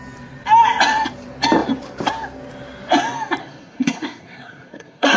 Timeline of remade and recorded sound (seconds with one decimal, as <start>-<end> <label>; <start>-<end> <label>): 0.0-3.4 recorded; 3.4-5.2 remade